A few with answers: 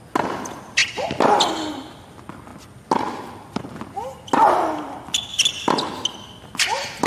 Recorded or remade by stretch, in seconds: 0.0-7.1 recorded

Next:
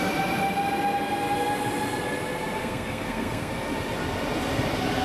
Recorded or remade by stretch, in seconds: 0.0-2.6 recorded; 2.6-3.5 remade; 3.5-5.0 recorded

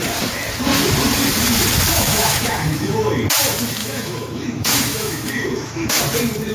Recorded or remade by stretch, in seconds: 0.0-1.9 recorded; 1.9-3.0 remade; 3.0-3.8 recorded; 3.8-6.0 remade; 6.0-6.5 recorded

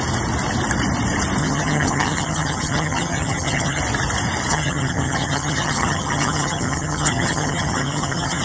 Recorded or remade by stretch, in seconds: 0.0-1.4 recorded; 1.4-3.8 remade; 3.8-4.5 recorded; 4.5-8.4 remade

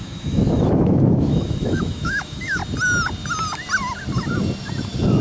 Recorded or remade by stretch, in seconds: 0.0-2.6 remade; 2.6-5.2 recorded

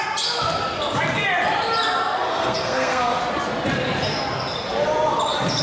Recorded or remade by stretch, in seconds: 0.0-2.3 recorded; 2.3-3.2 remade; 3.2-5.6 recorded

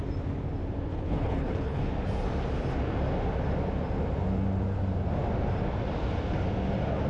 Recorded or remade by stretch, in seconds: 0.0-0.9 recorded; 0.9-1.8 remade; 1.8-7.1 recorded

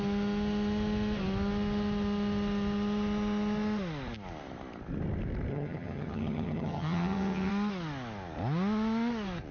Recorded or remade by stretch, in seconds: 0.0-5.5 recorded; 5.5-7.5 remade; 7.5-9.5 recorded